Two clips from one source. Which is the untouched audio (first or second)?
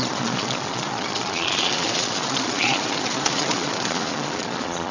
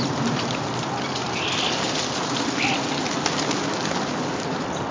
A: second